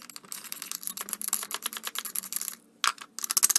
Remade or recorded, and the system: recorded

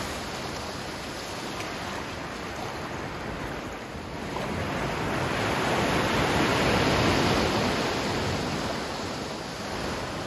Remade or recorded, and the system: recorded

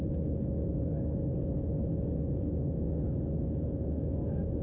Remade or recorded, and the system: remade, autoencoder, DAC-VAE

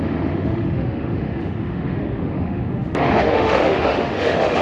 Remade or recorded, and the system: remade, autoencoder, DAC-VAE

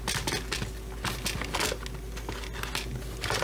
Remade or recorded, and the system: recorded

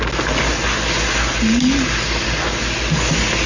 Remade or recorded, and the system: recorded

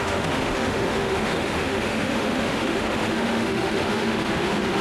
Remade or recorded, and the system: remade, autoencoder, DAC-VAE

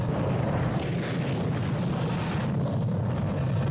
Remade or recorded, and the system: recorded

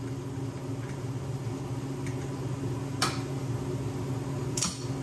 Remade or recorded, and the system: recorded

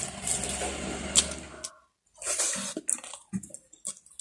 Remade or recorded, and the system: recorded